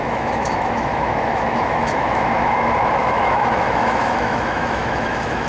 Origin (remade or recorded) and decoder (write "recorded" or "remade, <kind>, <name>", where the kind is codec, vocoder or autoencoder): remade, autoencoder, DAC-VAE